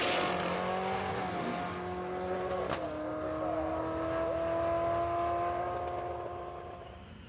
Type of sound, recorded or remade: recorded